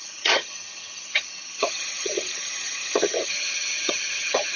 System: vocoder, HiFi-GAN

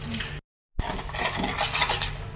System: none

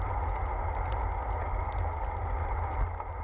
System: none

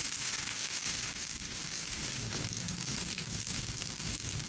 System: codec, DAC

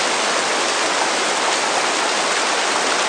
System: none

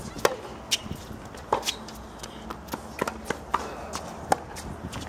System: none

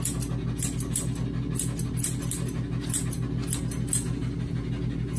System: none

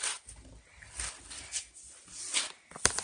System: none